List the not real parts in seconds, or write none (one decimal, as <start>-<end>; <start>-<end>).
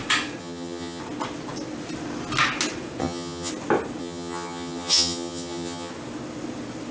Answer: 0.4-1.0; 3.0-3.5; 4.0-5.9